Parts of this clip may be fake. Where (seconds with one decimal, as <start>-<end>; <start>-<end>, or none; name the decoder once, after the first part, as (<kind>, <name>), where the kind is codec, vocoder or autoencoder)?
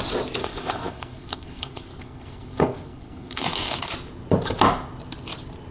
0.4-3.8 (codec, SNAC)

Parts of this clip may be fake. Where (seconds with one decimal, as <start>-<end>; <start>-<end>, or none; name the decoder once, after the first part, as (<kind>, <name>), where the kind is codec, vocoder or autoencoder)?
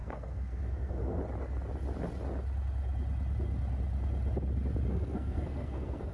0.0-1.2 (codec, SNAC); 4.9-6.1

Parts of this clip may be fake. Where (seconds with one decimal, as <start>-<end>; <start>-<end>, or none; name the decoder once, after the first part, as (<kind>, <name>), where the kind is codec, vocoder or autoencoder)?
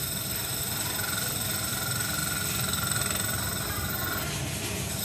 none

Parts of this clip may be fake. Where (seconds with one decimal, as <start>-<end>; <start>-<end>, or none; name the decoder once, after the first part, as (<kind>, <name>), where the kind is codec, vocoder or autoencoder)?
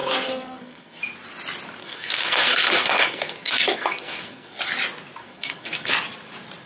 0.0-1.0 (codec, SNAC); 1.8-4.6; 5.2-5.9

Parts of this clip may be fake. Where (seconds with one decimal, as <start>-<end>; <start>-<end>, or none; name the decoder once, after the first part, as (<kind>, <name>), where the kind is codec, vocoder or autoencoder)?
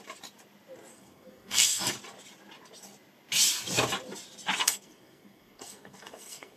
0.9-1.8 (codec, SNAC); 4.6-6.6